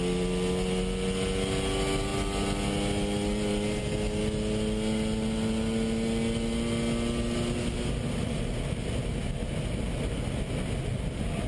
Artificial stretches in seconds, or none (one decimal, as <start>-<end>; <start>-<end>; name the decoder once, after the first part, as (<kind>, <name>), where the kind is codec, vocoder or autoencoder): none